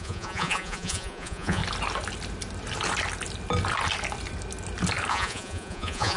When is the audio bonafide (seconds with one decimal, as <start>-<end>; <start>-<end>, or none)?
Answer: 1.6-5.1